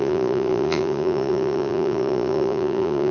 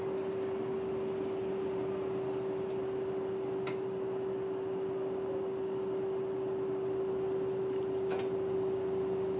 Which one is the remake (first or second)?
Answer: first